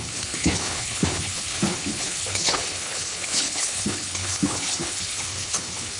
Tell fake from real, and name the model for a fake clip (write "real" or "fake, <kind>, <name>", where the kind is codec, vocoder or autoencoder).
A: fake, codec, HILCodec